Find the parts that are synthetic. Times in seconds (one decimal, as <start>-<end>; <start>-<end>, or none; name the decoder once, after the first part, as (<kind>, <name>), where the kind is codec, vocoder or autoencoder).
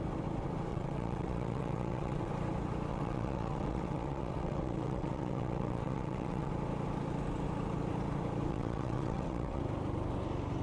0.7-2.3 (vocoder, WaveNeXt); 2.9-6.5; 8.5-9.6